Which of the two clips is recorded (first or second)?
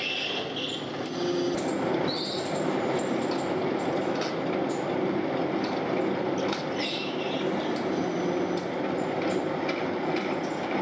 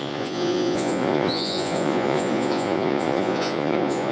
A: first